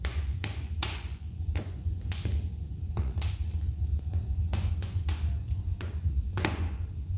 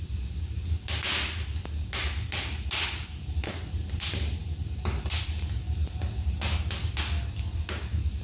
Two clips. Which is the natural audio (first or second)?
second